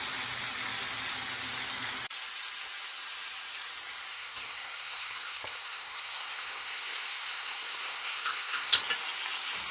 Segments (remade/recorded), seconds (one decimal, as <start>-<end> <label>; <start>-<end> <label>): 0.0-4.1 recorded; 4.1-8.8 remade; 8.8-9.7 recorded